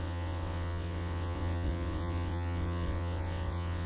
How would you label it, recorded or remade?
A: remade